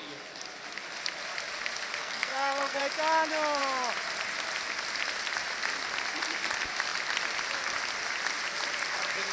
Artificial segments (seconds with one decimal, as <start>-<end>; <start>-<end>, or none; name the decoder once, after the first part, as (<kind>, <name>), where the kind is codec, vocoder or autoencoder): 2.0-2.8 (codec, SNAC)